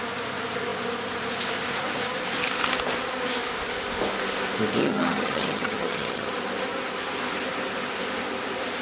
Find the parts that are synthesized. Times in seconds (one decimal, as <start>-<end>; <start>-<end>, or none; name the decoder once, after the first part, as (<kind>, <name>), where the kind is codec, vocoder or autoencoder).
4.8-6.3 (vocoder, HiFi-GAN)